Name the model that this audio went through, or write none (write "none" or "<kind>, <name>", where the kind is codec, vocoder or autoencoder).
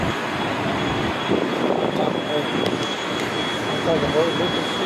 none